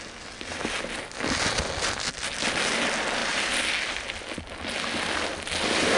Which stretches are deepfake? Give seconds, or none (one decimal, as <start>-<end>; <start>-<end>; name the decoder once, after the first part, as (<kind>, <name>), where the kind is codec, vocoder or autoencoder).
3.2-4.4 (vocoder, BigVGAN v2)